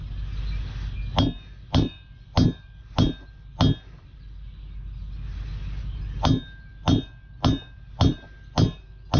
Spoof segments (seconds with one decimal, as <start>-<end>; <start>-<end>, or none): none